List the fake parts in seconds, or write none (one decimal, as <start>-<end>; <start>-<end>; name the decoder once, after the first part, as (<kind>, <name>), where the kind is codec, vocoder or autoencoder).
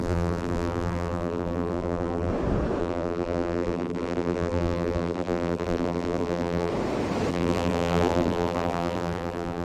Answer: 0.0-2.3 (vocoder, BigVGAN v2); 2.8-6.7; 7.3-9.6